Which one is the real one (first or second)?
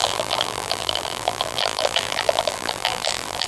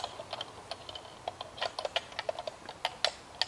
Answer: second